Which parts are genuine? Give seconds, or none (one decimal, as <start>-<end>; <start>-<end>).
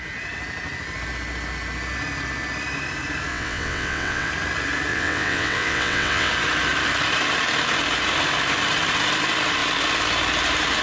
0.0-3.3; 4.3-4.9; 6.3-10.8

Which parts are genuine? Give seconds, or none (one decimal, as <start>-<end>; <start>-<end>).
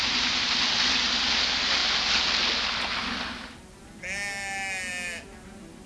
0.0-5.9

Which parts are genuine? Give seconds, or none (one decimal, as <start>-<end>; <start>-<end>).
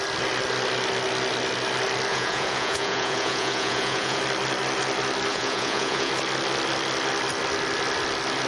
0.0-2.1; 4.2-5.3; 6.1-8.5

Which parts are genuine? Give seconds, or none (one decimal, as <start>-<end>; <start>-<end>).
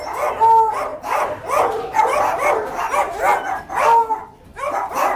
0.0-5.2